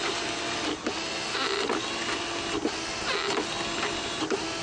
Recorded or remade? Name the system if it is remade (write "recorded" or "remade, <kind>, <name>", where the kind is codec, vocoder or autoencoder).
recorded